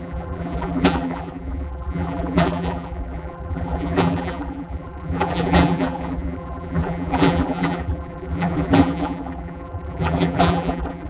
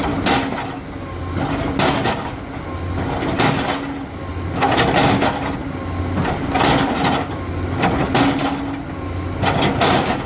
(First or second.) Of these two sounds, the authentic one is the second